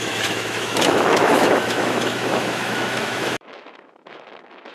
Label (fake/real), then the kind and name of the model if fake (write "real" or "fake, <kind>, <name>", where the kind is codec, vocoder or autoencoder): fake, autoencoder, DAC-VAE